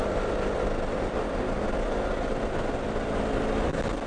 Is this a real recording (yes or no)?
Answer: yes